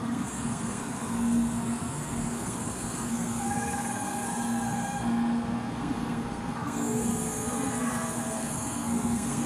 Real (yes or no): no